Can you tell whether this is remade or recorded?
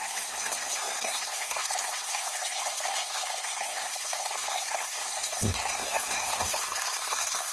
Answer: remade